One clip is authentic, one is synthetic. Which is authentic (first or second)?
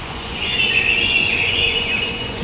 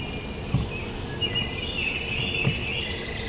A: second